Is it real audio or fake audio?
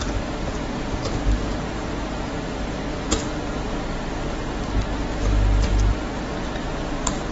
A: real